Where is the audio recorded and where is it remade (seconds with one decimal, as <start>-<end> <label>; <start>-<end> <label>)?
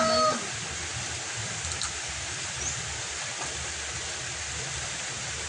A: 0.0-5.5 recorded